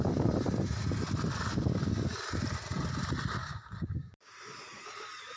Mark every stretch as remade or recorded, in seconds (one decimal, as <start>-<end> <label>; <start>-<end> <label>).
0.0-3.4 recorded; 3.4-4.3 remade; 4.3-5.4 recorded